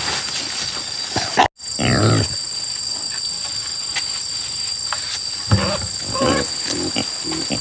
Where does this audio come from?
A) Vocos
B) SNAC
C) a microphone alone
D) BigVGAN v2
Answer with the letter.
C